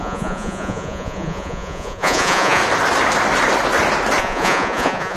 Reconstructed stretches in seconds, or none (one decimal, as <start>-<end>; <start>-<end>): 0.0-2.6; 4.2-5.2